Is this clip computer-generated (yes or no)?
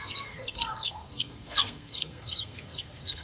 yes